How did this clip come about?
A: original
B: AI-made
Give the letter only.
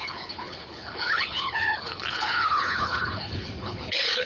B